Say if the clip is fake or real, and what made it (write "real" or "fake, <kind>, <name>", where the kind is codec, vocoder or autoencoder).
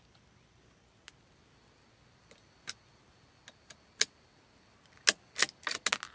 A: real